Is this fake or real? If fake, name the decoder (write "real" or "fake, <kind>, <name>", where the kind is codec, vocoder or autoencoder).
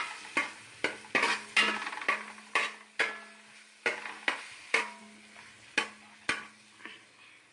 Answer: real